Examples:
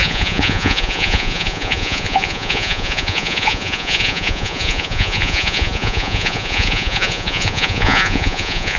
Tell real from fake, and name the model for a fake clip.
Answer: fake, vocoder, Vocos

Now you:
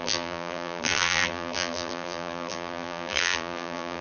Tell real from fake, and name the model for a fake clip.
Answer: fake, vocoder, BigVGAN v2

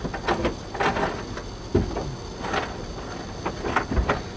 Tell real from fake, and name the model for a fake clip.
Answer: real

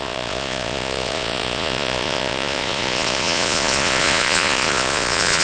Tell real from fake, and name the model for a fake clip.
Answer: fake, vocoder, Vocos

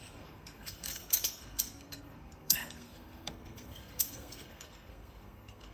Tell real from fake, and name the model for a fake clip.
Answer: fake, codec, SNAC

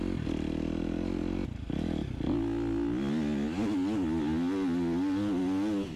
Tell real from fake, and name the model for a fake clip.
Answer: real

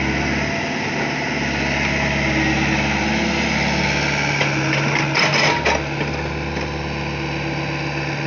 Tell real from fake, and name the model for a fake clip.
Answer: real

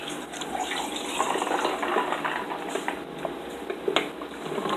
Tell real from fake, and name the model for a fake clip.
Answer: real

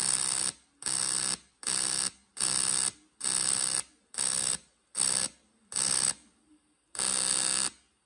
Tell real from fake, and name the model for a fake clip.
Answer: real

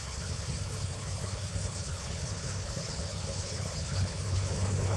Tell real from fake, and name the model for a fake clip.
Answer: fake, codec, HILCodec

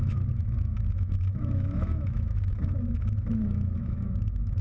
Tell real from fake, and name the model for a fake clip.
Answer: fake, autoencoder, DAC-VAE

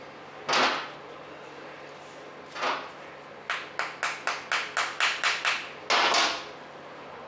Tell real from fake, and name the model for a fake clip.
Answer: real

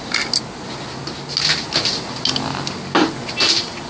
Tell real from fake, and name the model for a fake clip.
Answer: real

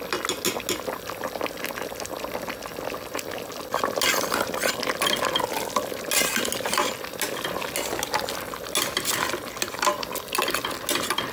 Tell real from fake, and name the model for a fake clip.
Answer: real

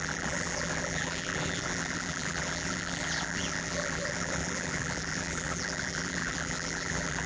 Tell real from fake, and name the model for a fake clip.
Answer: fake, vocoder, BigVGAN v2